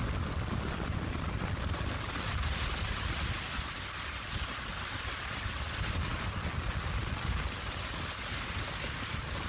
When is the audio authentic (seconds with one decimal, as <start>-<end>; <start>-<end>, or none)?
0.0-9.5